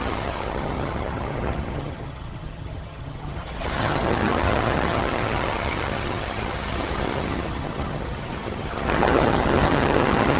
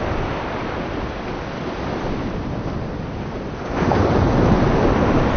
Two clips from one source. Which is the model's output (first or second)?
first